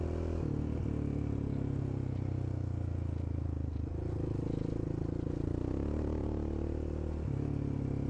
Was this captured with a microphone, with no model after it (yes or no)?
yes